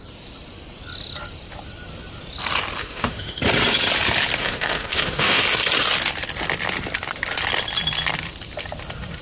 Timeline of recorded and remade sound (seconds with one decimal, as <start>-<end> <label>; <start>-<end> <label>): 0.0-2.8 recorded; 2.8-3.4 remade; 3.4-4.4 recorded; 4.4-5.4 remade; 5.4-9.2 recorded